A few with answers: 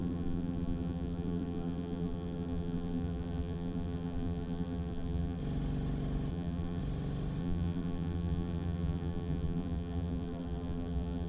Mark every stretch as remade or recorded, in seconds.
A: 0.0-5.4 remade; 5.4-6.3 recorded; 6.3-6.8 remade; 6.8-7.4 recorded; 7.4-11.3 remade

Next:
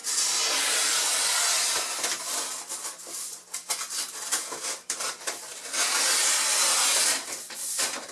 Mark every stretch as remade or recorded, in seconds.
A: 0.0-0.6 recorded; 0.6-1.1 remade; 1.1-2.0 recorded; 2.0-8.1 remade